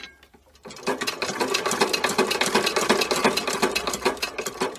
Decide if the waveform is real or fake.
real